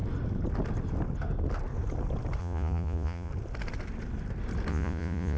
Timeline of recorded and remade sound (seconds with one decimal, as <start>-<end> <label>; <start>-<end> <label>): 0.0-2.4 recorded; 2.4-3.3 remade; 3.3-4.7 recorded; 4.7-5.4 remade